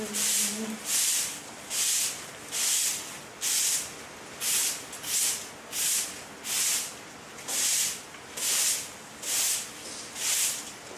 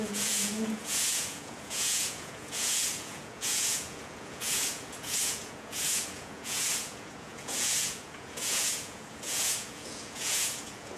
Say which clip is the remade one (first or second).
second